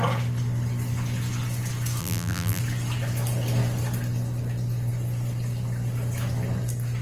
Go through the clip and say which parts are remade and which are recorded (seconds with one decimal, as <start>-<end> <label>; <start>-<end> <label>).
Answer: 0.0-2.0 recorded; 2.0-2.6 remade; 2.6-7.0 recorded